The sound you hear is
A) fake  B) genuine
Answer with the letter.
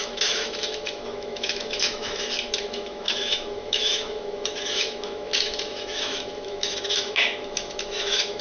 A